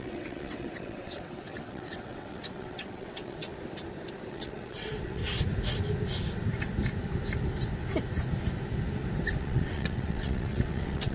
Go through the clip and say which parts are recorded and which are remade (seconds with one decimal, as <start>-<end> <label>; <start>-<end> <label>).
0.0-3.5 remade; 3.5-4.3 recorded; 4.3-5.2 remade; 5.2-9.4 recorded; 9.4-11.1 remade